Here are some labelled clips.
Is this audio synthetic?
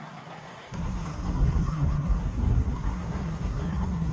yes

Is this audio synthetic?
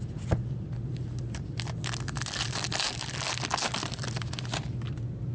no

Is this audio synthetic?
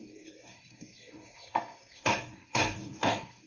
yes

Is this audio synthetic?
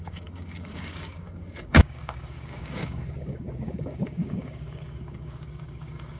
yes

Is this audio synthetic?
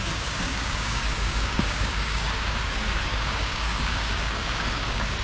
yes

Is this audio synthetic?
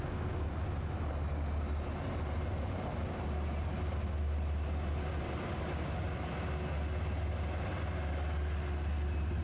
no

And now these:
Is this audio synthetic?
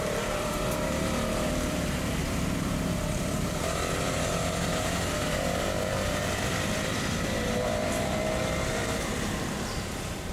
yes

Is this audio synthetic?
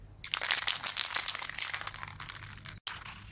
no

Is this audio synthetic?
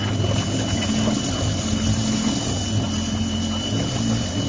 no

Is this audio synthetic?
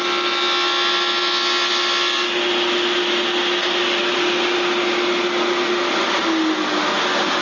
no